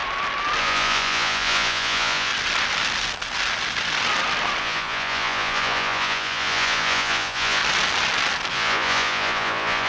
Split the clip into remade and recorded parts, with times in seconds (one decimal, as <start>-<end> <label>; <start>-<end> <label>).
0.0-0.6 recorded; 0.6-2.3 remade; 2.3-4.6 recorded; 4.6-7.6 remade; 7.6-8.5 recorded; 8.5-9.9 remade